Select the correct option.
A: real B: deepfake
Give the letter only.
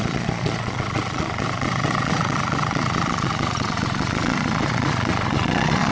B